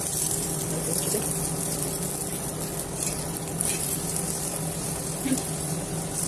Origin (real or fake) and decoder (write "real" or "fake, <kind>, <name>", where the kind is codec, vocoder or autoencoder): real